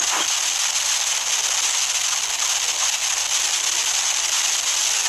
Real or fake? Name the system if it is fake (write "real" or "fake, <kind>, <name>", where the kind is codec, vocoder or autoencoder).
real